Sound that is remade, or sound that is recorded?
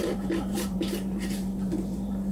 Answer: remade